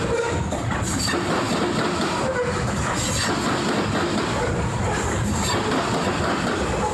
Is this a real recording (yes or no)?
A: yes